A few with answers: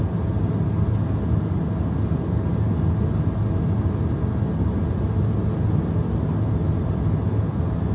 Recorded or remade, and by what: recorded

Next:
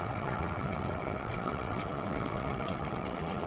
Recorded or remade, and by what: remade, vocoder, WaveNeXt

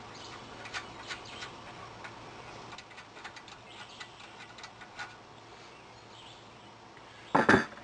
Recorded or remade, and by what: recorded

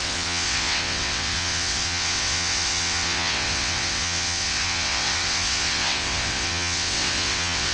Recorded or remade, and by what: remade, vocoder, WaveNeXt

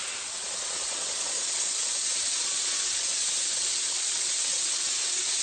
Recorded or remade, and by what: remade, vocoder, WaveNeXt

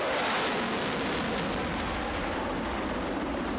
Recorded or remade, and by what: recorded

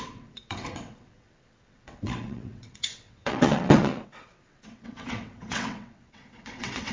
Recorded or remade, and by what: remade, vocoder, WaveNeXt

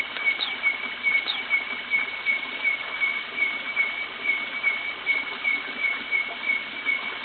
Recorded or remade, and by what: recorded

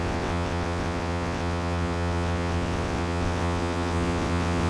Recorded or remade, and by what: remade, vocoder, WaveNeXt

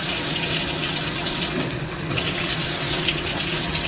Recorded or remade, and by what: remade, vocoder, WaveNeXt